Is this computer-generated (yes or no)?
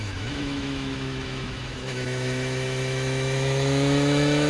yes